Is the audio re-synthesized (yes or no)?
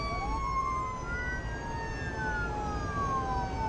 no